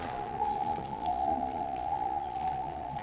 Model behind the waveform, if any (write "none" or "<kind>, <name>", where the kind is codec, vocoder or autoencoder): vocoder, Vocos